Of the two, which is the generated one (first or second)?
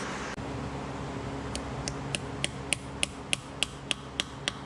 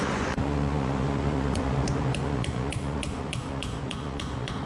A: second